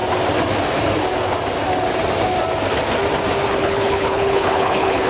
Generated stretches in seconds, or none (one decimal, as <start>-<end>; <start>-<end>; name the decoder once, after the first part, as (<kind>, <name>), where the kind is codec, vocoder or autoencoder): 3.5-5.1 (codec, HILCodec)